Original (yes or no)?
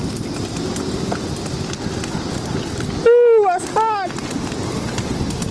yes